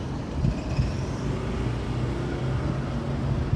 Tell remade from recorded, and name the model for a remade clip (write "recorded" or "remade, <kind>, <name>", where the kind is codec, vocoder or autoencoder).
recorded